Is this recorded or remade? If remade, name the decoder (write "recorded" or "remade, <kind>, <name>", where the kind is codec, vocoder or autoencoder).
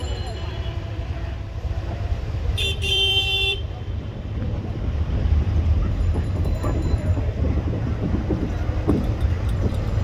remade, vocoder, BigVGAN v2